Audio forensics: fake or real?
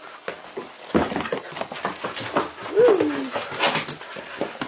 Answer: real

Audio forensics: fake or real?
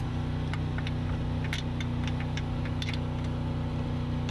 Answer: real